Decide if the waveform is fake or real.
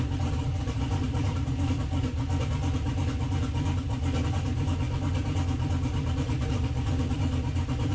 real